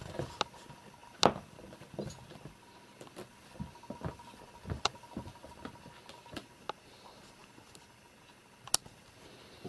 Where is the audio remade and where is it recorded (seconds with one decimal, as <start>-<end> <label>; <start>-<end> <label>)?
0.0-9.7 recorded